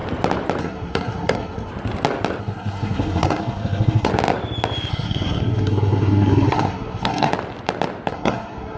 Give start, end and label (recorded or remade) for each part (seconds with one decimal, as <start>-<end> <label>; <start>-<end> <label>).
0.0-0.6 recorded; 0.6-1.7 remade; 1.7-2.4 recorded; 2.4-4.1 remade; 4.1-4.9 recorded; 4.9-7.3 remade; 7.3-8.1 recorded; 8.1-8.8 remade